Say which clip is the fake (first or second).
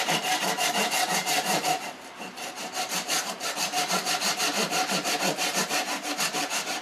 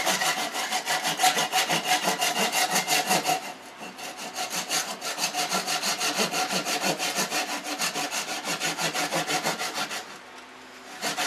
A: first